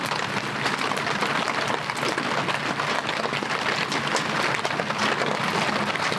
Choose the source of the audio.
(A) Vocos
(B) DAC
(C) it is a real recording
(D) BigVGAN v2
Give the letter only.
C